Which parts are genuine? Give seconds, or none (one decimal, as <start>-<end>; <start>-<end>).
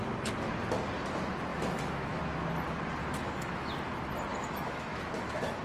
0.0-1.5; 2.2-3.0; 3.7-4.3